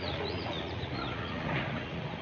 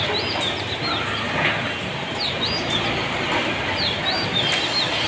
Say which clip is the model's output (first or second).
first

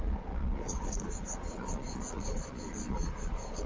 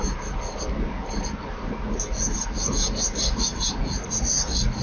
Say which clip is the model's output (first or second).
first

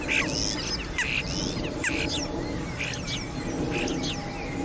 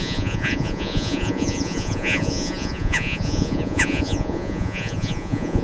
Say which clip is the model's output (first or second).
second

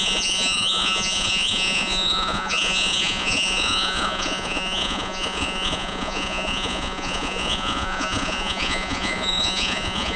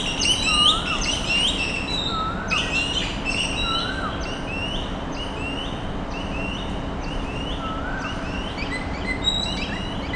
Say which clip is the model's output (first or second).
first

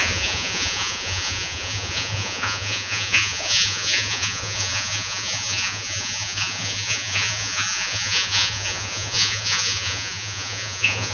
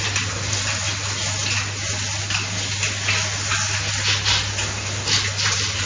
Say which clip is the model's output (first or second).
first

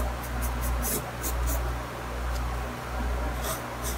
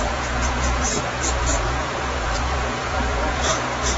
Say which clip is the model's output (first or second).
second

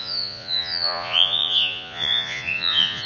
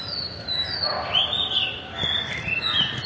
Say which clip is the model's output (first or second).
first